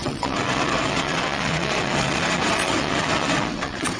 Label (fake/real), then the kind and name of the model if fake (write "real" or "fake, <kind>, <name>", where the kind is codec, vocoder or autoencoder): fake, vocoder, WaveNeXt